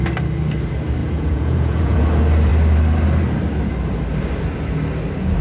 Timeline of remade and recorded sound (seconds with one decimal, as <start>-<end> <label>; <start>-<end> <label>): 0.0-1.0 recorded; 1.0-2.0 remade; 2.0-5.4 recorded